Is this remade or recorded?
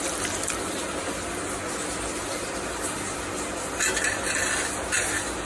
recorded